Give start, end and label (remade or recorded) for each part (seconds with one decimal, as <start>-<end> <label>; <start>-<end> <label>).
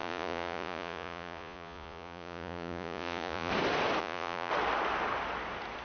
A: 0.0-3.5 remade; 3.5-4.0 recorded; 4.0-4.5 remade; 4.5-5.8 recorded